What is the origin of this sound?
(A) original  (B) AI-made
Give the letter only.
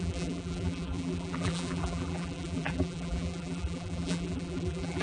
B